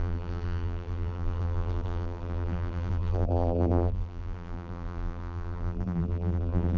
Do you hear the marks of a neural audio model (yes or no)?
yes